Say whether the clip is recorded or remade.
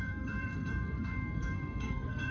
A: remade